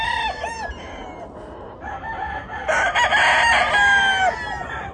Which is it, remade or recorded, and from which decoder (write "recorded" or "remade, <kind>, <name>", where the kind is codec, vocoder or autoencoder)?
recorded